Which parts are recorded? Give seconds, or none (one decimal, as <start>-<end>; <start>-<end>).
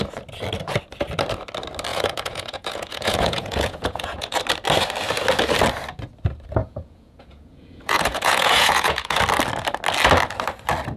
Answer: 0.0-1.9; 4.4-6.6; 9.2-11.0